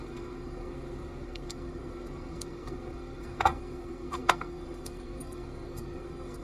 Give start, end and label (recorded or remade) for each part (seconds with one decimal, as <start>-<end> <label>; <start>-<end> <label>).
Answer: 0.0-6.4 remade